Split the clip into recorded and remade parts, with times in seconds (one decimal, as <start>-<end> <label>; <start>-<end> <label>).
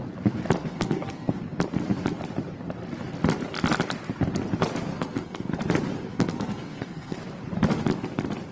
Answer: 0.0-0.6 recorded; 0.6-1.4 remade; 1.4-4.9 recorded; 4.9-5.5 remade; 5.5-6.1 recorded; 6.1-7.2 remade; 7.2-8.5 recorded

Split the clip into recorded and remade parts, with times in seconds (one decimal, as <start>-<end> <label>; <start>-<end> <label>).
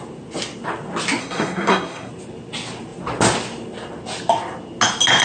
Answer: 0.0-1.2 recorded; 1.2-2.1 remade; 2.1-5.2 recorded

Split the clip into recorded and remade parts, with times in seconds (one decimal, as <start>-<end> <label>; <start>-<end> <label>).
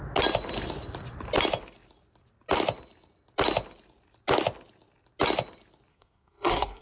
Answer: 0.0-5.9 recorded; 5.9-6.8 remade